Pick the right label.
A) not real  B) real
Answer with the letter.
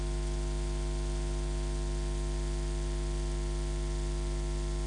B